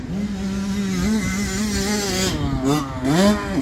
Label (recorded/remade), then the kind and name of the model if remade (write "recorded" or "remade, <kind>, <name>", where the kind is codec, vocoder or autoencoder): recorded